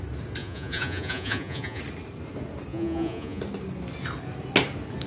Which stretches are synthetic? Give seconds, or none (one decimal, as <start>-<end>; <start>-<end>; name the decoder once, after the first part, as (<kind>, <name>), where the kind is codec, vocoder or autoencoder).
0.4-1.8 (vocoder, Vocos); 2.7-3.4